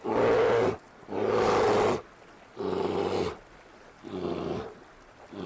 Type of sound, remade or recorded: recorded